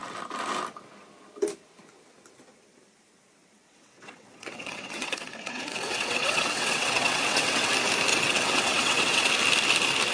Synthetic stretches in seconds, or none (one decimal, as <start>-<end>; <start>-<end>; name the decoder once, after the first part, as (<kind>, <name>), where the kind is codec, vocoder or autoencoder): 3.4-7.7 (vocoder, WaveNeXt); 8.1-9.3